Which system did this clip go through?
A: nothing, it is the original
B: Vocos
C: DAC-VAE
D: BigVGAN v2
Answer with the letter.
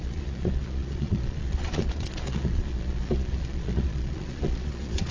B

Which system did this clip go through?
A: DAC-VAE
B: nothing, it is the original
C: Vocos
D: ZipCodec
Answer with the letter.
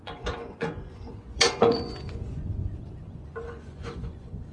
C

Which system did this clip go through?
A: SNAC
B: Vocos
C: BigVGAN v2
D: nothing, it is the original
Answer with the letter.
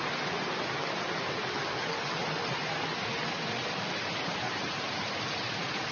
D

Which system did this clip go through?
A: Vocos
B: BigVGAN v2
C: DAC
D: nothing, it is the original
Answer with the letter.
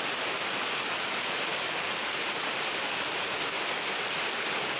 D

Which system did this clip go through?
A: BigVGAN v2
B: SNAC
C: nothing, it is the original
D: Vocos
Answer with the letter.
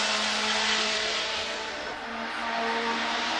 C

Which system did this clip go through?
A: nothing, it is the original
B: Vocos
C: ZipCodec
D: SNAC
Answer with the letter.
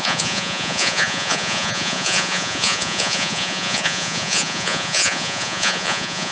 B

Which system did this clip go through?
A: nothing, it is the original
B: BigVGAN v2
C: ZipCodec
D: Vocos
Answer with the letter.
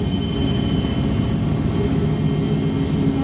A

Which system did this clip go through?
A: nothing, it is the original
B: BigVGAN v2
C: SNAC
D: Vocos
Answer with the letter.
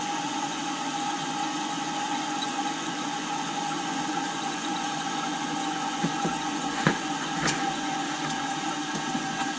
D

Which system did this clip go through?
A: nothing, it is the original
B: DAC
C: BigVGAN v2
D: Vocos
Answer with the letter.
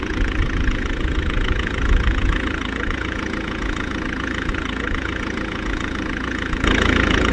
D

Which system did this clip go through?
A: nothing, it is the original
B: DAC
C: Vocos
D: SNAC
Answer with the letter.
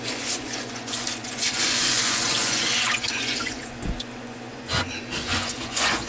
C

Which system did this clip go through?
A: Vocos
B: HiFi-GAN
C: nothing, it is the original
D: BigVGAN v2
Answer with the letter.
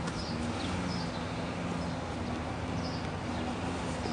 C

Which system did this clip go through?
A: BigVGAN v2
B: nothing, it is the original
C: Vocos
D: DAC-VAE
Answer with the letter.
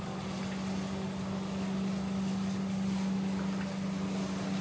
B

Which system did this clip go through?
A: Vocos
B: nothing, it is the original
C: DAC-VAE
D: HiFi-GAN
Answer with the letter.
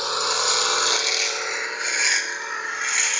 B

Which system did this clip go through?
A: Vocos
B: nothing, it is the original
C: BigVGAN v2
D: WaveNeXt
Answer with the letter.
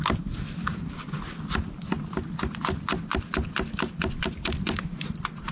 B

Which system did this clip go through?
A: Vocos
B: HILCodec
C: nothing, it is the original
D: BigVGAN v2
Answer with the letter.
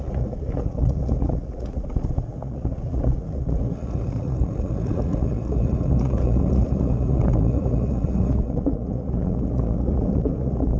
A